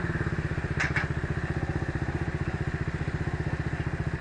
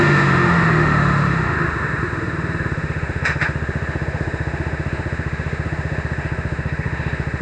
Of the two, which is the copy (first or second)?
second